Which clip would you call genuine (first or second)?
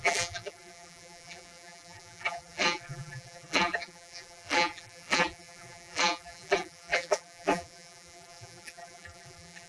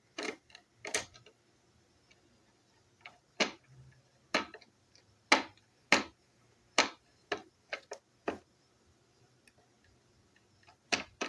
second